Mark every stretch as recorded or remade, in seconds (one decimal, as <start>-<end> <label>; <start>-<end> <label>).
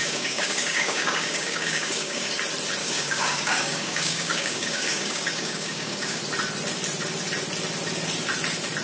0.0-2.3 remade; 2.3-2.8 recorded; 2.8-6.2 remade; 6.2-8.8 recorded